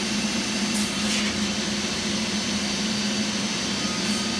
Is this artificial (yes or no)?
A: no